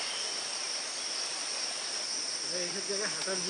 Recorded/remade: recorded